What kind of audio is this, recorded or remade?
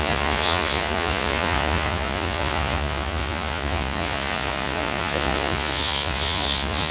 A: remade